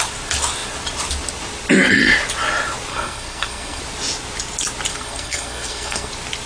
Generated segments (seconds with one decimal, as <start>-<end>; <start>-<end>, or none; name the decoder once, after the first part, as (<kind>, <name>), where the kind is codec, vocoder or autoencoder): 2.9-3.8 (codec, SNAC); 4.9-6.1